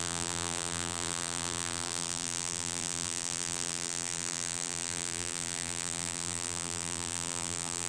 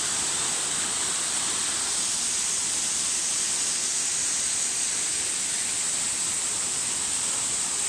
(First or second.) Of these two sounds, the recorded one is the second